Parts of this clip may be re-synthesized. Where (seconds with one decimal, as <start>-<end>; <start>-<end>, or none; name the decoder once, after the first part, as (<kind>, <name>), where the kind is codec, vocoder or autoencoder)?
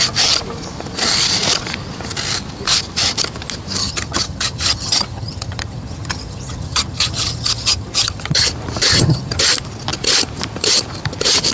3.8-8.5 (vocoder, HiFi-GAN); 8.9-9.4